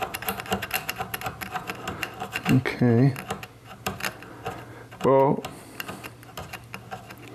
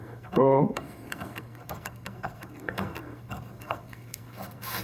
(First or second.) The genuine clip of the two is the first